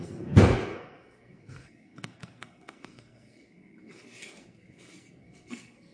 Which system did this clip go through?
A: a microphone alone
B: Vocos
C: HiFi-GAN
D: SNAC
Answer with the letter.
D